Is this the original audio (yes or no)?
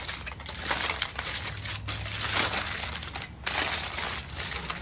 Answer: yes